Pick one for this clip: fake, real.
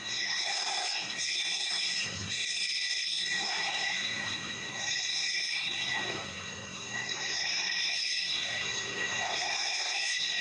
fake